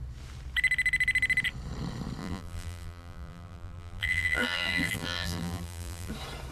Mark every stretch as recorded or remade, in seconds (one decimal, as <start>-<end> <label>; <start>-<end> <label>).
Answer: 0.0-2.2 recorded; 2.2-6.1 remade; 6.1-6.5 recorded